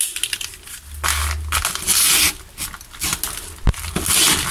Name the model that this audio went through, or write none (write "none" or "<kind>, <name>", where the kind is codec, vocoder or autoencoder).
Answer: none